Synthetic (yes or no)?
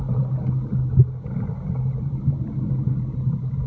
no